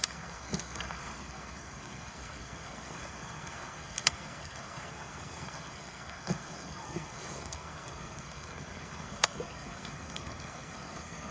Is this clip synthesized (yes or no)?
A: yes